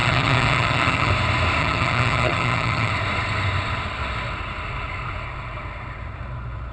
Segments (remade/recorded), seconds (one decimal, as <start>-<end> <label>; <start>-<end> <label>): 0.0-1.1 remade; 1.1-1.6 recorded; 1.6-2.9 remade; 2.9-6.7 recorded